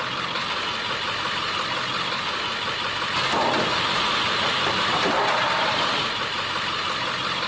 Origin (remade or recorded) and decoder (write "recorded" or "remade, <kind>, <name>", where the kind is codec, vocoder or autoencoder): recorded